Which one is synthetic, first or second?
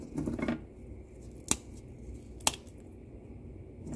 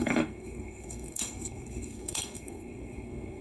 second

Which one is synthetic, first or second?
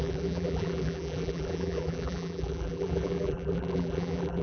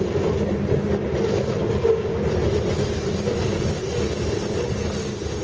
first